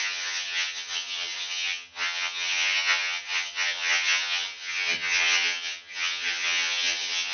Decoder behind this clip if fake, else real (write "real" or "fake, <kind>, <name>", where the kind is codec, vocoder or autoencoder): fake, vocoder, HiFi-GAN